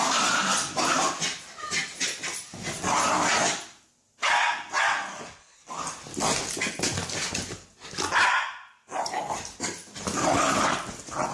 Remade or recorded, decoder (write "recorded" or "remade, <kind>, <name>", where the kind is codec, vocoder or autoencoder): recorded